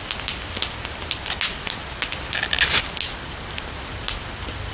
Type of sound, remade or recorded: recorded